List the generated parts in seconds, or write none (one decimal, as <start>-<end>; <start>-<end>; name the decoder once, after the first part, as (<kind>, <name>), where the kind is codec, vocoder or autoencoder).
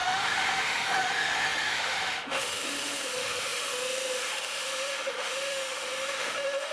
0.0-6.7 (autoencoder, DAC-VAE)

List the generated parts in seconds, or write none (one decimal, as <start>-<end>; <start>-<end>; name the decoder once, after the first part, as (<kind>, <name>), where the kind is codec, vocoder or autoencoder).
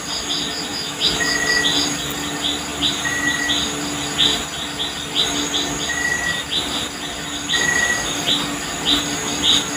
0.7-1.3 (autoencoder, DAC-VAE)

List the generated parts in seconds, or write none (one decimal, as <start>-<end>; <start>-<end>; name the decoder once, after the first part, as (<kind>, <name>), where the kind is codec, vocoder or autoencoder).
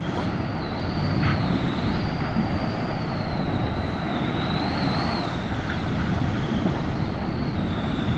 none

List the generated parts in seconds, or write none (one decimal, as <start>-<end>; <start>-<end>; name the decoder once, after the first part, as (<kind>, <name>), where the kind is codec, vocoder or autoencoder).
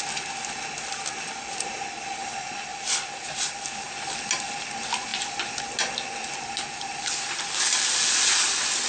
none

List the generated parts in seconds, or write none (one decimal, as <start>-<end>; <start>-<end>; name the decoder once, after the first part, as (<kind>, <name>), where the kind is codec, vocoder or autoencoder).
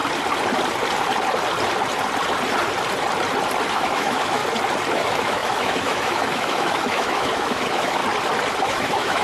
3.7-4.4 (autoencoder, DAC-VAE); 4.9-8.0; 8.6-9.2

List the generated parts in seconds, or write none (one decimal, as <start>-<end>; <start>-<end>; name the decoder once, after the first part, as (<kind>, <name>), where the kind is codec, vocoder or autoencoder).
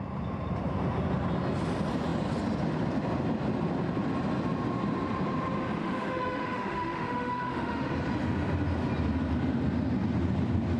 5.8-7.9 (autoencoder, DAC-VAE)